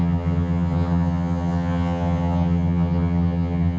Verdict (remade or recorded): remade